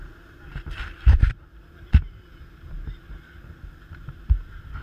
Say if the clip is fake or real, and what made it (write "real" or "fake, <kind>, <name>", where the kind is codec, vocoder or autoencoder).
real